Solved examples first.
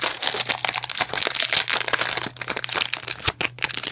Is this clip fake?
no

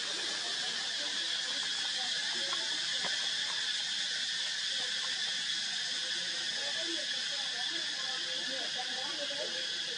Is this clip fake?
no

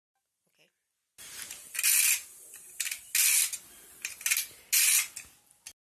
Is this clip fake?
no